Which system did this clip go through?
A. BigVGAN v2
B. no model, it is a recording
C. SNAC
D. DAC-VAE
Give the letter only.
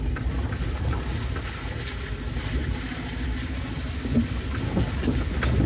B